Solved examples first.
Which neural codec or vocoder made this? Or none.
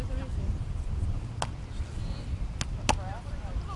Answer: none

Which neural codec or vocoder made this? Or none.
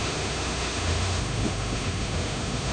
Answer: autoencoder, DAC-VAE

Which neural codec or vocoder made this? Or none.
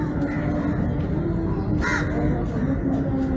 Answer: none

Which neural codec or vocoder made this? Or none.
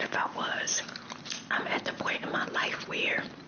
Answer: none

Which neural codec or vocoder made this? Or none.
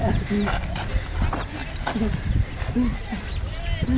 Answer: none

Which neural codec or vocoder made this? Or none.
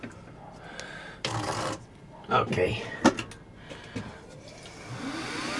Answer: none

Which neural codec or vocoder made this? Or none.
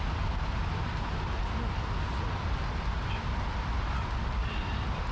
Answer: none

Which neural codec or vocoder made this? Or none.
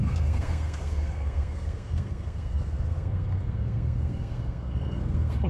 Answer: codec, SNAC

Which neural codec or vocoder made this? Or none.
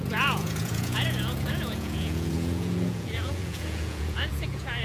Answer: vocoder, Vocos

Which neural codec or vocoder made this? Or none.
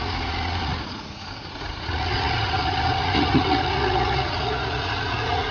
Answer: vocoder, Vocos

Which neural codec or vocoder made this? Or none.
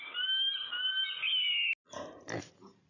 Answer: none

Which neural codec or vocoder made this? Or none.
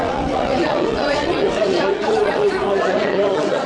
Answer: vocoder, WaveNeXt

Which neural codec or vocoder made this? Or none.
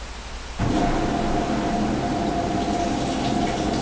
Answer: none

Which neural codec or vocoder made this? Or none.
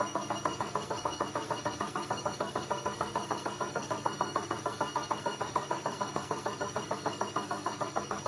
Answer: codec, SNAC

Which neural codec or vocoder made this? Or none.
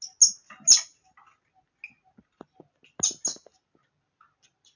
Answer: none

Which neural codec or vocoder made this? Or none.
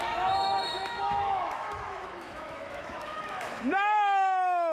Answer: autoencoder, DAC-VAE